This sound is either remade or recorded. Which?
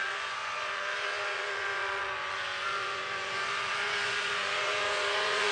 remade